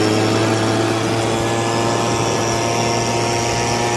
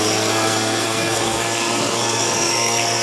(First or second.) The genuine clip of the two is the first